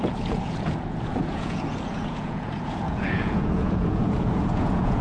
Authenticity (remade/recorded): remade